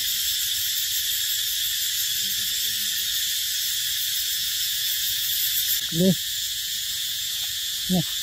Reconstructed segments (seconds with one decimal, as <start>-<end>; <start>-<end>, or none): 4.3-5.3; 6.0-8.2